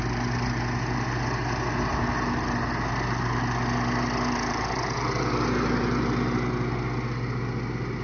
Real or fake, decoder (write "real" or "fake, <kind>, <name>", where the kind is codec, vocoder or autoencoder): real